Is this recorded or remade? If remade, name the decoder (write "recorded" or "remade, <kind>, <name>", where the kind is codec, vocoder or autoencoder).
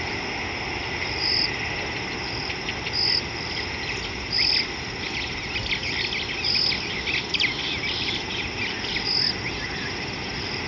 recorded